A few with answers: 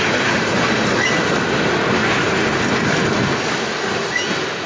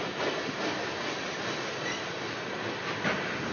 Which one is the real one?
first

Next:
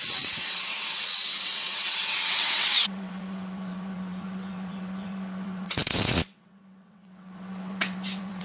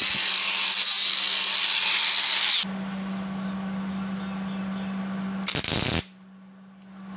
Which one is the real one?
second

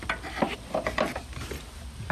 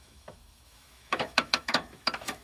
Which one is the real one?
first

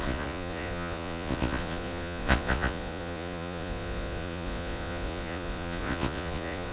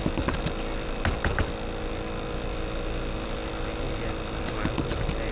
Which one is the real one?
second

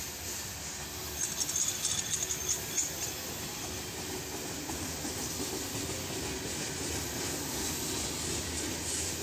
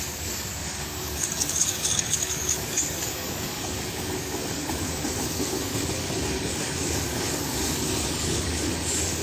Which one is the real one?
first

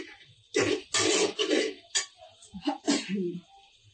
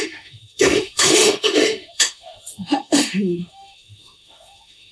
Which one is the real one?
first